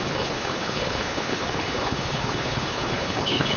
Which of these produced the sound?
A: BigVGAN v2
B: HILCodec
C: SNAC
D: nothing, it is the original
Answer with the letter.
B